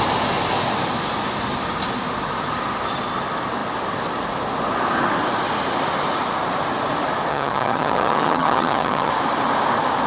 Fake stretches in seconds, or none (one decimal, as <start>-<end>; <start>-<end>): 7.3-9.1